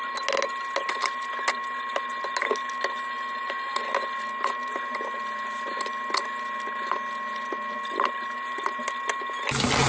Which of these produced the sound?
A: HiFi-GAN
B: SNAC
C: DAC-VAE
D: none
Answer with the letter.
D